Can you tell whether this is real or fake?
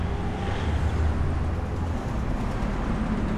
real